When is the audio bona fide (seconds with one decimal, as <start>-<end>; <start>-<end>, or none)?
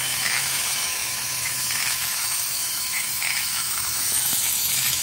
none